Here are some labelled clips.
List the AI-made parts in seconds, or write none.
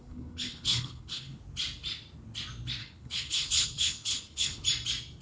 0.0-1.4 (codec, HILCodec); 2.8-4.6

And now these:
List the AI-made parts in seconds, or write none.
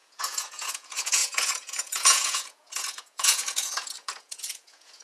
0.0-5.0 (vocoder, Vocos)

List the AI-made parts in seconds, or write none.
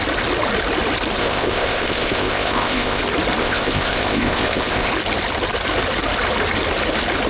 1.2-3.0 (codec, ZipCodec); 3.4-4.9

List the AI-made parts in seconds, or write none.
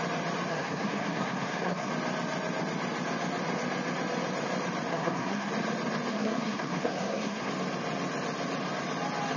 0.5-1.9 (codec, SNAC); 4.9-5.5; 6.1-7.5